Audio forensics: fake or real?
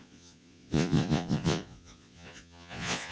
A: fake